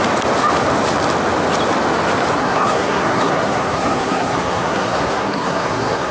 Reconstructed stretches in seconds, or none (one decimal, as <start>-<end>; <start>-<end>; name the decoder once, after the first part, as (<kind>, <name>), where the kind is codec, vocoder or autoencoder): 2.4-6.1 (codec, SNAC)